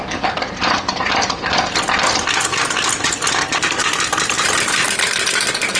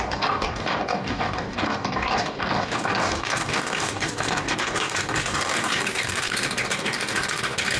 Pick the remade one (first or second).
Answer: second